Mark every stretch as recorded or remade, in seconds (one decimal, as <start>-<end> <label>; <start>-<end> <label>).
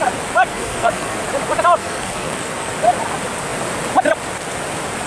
0.0-0.5 recorded; 0.5-1.2 remade; 1.2-1.8 recorded; 1.8-2.7 remade; 2.7-5.1 recorded